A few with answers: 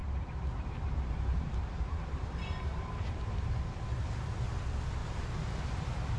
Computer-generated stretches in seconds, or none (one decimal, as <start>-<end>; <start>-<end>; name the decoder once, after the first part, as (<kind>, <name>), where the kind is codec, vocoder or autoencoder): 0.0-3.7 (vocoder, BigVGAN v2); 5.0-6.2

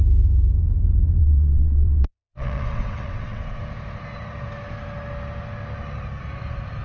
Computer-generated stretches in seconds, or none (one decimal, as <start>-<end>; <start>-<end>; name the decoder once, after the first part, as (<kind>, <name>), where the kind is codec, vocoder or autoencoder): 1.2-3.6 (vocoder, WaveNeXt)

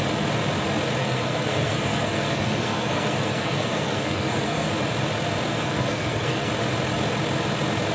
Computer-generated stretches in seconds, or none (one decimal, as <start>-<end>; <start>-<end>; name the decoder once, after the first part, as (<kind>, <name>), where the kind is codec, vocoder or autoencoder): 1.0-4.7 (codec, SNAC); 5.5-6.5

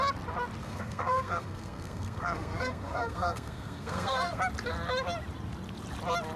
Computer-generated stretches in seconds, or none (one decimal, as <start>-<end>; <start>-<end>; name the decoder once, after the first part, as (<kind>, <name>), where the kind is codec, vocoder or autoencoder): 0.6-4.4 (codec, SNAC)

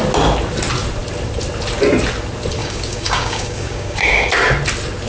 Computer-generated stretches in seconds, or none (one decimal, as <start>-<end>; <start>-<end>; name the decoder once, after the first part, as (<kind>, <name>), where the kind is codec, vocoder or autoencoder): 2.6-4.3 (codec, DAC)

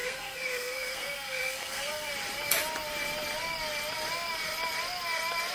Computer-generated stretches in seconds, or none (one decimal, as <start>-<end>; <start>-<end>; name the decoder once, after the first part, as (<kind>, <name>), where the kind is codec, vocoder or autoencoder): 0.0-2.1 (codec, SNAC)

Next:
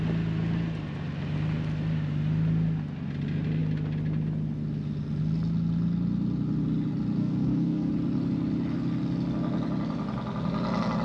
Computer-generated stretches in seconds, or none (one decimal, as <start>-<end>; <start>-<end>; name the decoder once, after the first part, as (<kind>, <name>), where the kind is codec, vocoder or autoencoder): 7.2-7.9 (codec, SNAC)